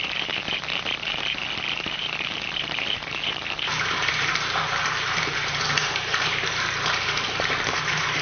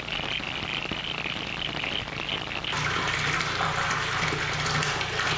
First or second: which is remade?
first